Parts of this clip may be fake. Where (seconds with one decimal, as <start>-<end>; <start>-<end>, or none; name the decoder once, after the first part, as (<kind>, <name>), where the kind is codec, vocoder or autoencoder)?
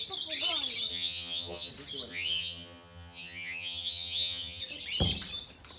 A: 0.9-1.7 (vocoder, HiFi-GAN); 2.1-4.6